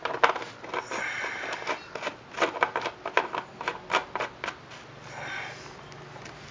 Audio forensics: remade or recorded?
recorded